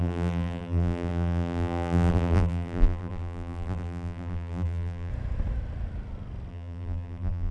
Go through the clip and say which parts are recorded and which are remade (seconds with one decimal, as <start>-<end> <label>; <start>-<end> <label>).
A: 0.0-5.1 remade; 5.1-6.5 recorded; 6.5-7.5 remade